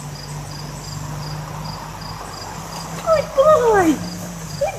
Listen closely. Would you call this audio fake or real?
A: real